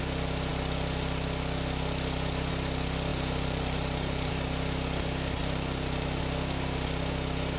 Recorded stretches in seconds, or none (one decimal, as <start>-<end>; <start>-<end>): 0.0-3.1; 4.3-5.4; 6.2-7.6